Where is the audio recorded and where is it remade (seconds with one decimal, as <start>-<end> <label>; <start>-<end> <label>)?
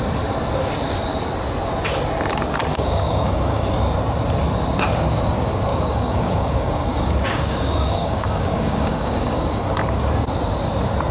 0.0-2.7 recorded; 2.7-3.7 remade; 3.7-5.7 recorded; 5.7-9.7 remade; 9.7-11.1 recorded